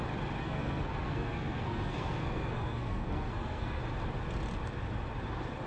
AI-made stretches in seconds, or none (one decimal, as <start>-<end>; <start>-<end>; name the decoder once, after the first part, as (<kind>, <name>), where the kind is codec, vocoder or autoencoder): 0.4-3.8 (codec, SNAC)